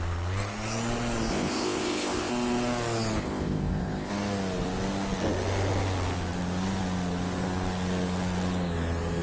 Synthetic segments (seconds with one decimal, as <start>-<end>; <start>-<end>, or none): 1.3-2.3; 3.2-4.1

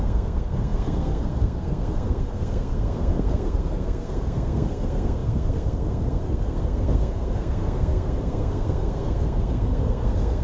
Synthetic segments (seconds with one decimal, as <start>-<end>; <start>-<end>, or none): 0.0-10.4

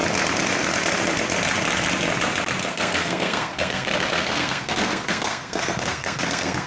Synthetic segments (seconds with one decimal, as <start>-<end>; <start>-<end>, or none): 2.6-6.7

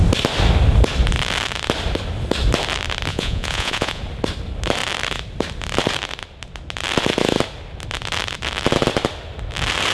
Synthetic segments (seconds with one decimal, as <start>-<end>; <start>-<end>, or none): 3.1-4.0

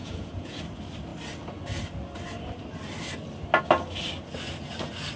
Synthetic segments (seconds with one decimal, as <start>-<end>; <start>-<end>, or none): 0.0-0.6

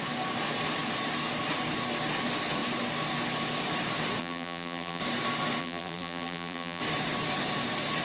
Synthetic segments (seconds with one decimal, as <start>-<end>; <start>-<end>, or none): 4.2-5.0; 5.6-6.8